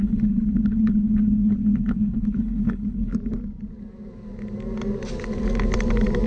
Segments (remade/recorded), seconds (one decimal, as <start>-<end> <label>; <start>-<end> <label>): 0.0-3.1 remade; 3.1-6.3 recorded

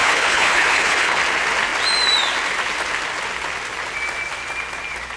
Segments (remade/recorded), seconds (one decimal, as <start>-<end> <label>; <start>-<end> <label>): 0.0-1.2 remade; 1.2-5.2 recorded

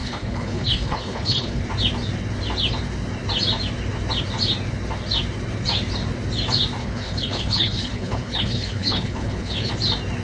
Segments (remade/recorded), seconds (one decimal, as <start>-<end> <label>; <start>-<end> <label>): 0.0-1.6 remade; 1.6-6.8 recorded; 6.8-9.7 remade; 9.7-10.2 recorded

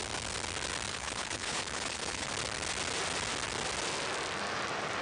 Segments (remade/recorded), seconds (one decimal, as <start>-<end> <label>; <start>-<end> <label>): 0.0-0.9 recorded; 0.9-2.3 remade; 2.3-5.0 recorded

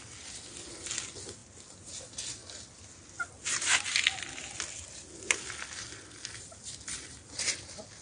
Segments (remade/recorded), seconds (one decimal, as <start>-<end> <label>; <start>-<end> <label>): 0.0-8.0 recorded

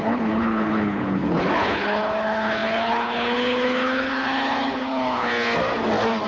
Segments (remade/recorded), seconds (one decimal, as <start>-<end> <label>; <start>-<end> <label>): 0.0-5.3 remade; 5.3-6.3 recorded

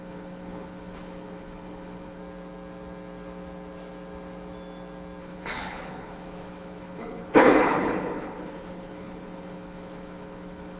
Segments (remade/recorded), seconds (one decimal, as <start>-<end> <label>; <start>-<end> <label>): 0.0-2.2 remade; 2.2-5.2 recorded; 5.2-10.8 remade

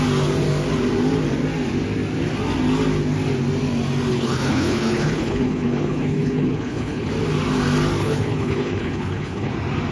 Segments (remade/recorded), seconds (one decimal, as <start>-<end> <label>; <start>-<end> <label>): 0.0-4.1 recorded; 4.1-7.1 remade; 7.1-8.0 recorded; 8.0-9.5 remade; 9.5-9.9 recorded